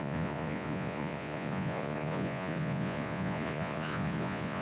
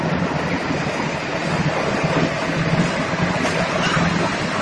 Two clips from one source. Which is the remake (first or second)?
first